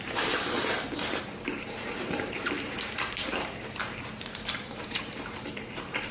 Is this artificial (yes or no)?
yes